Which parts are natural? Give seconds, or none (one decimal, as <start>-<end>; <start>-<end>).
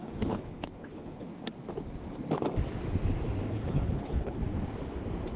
1.3-3.5; 4.4-5.4